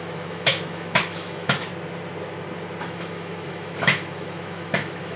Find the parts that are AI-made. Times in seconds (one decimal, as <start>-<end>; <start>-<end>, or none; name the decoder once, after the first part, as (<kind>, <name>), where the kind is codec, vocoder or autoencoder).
0.0-1.7 (autoencoder, DAC-VAE); 2.8-5.2